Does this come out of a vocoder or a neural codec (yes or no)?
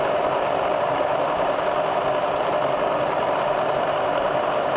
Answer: no